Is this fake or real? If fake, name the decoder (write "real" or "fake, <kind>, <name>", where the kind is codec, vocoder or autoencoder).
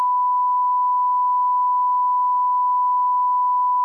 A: real